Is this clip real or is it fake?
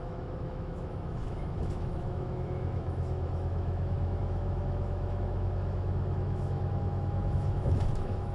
fake